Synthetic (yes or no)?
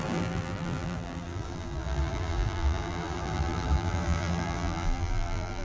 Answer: yes